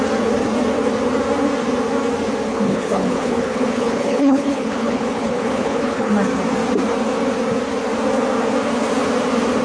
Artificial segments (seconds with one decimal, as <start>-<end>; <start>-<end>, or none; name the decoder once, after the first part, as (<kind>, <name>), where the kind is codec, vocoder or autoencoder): 2.5-6.1 (codec, HILCodec)